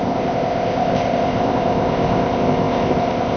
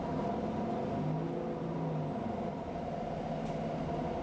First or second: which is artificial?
first